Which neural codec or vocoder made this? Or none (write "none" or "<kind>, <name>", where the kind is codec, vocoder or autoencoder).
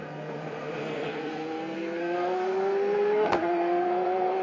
codec, SNAC